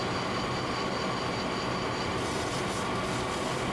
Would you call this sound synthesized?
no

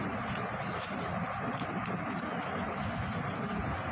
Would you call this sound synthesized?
no